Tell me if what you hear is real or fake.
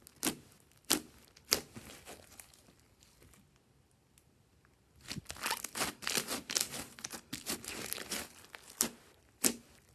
real